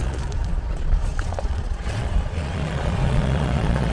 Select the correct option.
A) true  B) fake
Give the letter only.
B